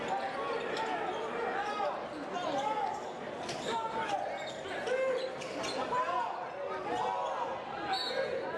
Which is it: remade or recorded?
recorded